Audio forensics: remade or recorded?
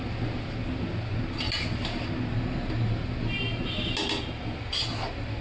recorded